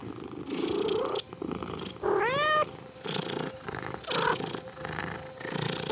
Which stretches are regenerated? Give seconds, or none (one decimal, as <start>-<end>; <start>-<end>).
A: none